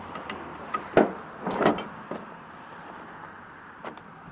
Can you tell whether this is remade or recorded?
recorded